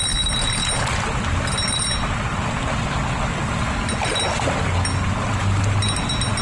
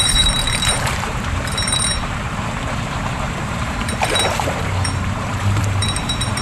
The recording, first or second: first